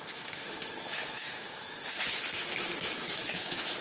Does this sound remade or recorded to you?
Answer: remade